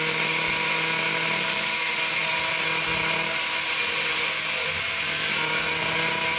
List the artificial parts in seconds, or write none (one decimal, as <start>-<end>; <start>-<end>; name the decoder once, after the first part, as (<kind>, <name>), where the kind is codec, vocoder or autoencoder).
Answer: none